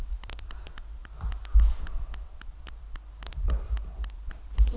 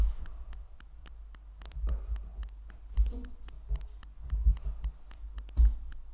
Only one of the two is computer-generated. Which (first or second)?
first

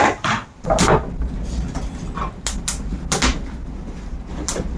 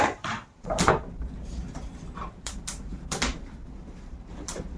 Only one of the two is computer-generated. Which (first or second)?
second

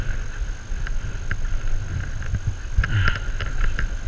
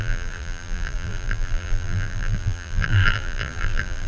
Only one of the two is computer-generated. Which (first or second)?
second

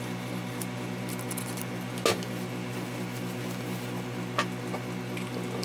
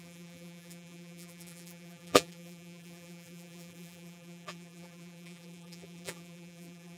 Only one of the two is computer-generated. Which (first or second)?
second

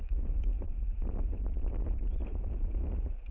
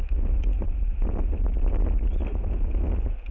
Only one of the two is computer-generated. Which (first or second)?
first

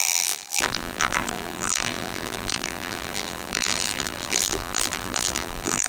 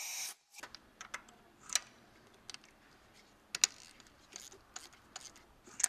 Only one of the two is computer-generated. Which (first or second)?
first